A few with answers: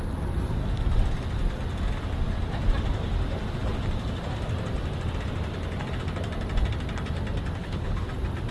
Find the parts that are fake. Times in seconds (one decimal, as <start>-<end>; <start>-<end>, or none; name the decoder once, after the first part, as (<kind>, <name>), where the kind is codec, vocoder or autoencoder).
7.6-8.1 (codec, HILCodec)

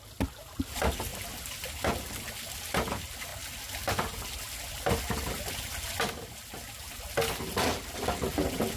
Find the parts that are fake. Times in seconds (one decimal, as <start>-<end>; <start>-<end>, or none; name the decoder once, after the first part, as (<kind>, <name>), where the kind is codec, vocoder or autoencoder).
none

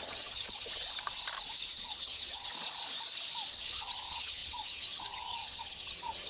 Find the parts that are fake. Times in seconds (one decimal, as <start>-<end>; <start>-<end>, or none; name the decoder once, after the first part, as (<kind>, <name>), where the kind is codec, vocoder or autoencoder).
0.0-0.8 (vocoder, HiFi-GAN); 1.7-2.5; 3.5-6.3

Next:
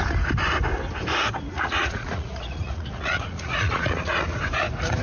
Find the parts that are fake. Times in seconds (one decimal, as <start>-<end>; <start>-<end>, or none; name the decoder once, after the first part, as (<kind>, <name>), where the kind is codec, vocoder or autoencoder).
1.5-4.4 (vocoder, Vocos)